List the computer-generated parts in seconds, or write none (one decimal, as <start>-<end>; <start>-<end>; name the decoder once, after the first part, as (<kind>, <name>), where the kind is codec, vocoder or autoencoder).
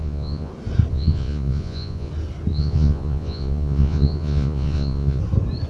0.0-0.5 (vocoder, Vocos); 0.9-2.1; 2.5-5.2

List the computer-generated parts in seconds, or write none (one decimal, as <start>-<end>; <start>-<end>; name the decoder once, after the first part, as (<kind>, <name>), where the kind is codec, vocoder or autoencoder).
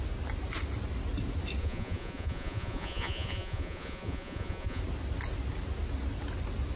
1.6-4.8 (vocoder, Vocos)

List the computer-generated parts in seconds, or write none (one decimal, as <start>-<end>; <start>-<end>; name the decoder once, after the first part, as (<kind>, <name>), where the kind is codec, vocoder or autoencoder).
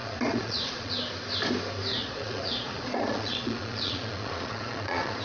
0.0-0.9 (vocoder, Vocos); 1.9-5.2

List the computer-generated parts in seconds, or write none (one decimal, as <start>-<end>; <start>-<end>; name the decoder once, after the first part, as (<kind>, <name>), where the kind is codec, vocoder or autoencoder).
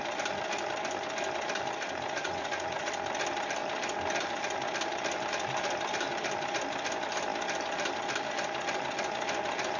2.2-2.9 (vocoder, Vocos)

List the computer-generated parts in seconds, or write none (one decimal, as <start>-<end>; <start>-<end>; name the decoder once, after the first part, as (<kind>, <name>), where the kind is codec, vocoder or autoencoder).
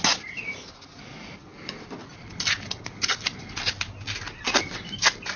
none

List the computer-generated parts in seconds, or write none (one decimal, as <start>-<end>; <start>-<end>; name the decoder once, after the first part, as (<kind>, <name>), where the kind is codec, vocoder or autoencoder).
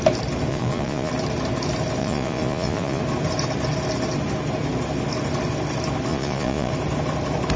0.5-1.1 (vocoder, Vocos); 2.0-3.0; 6.1-6.7